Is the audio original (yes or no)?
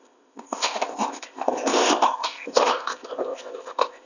no